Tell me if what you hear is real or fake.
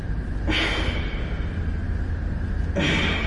real